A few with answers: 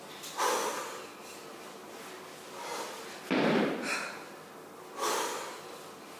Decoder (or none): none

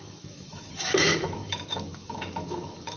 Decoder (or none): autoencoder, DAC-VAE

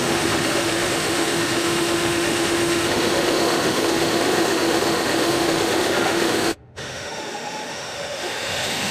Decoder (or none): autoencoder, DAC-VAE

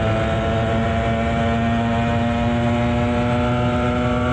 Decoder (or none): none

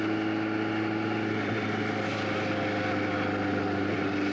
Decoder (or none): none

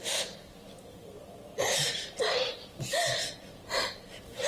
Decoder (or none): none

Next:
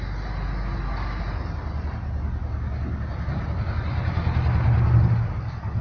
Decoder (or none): none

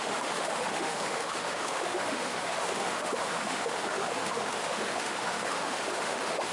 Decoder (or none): autoencoder, DAC-VAE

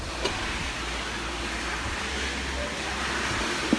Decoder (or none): none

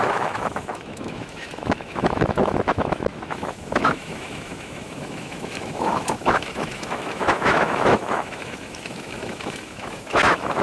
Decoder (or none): autoencoder, DAC-VAE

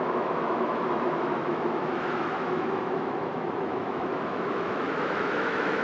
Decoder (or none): autoencoder, DAC-VAE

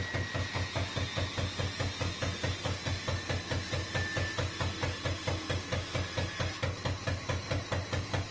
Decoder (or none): none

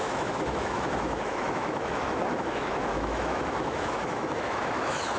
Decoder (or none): autoencoder, DAC-VAE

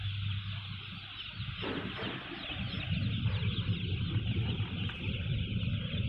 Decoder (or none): none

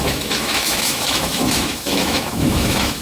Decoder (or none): autoencoder, DAC-VAE